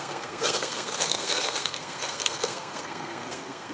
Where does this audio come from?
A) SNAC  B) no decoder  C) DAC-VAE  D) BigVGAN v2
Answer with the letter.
A